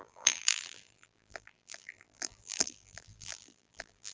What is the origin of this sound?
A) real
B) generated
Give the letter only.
B